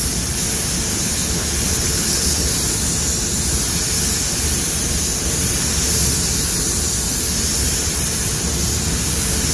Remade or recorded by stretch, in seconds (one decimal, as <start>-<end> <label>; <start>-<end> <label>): 0.0-0.9 recorded; 0.9-2.5 remade; 2.5-9.5 recorded